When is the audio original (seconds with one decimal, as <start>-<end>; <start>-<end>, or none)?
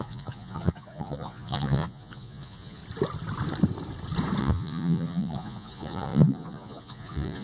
2.8-4.4